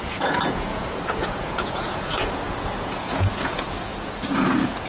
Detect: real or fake fake